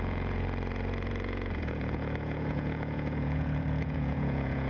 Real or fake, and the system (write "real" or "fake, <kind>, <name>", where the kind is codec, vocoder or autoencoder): fake, vocoder, Vocos